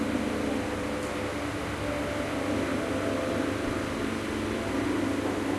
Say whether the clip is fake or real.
real